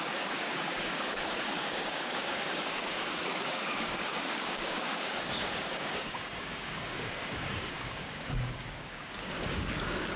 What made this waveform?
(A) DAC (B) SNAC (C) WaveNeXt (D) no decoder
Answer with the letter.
A